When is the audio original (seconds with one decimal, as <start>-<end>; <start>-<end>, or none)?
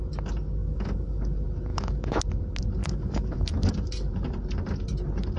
0.0-0.6; 1.2-1.7; 2.2-2.8; 3.7-5.4